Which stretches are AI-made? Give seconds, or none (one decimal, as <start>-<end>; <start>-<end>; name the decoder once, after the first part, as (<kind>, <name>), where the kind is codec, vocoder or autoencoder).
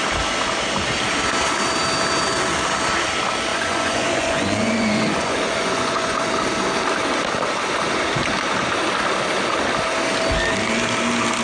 3.5-6.3 (vocoder, Vocos)